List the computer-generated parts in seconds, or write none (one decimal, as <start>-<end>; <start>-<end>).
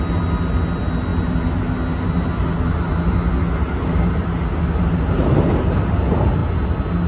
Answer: none